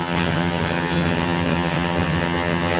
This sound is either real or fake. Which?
fake